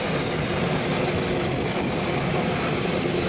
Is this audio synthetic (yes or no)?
no